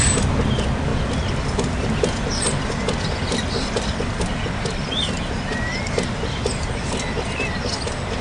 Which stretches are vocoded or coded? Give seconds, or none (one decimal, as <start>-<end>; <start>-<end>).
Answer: none